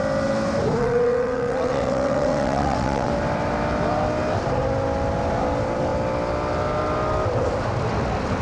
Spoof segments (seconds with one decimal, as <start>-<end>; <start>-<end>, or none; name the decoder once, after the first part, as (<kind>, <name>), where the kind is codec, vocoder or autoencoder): 0.8-3.1 (vocoder, WaveNeXt)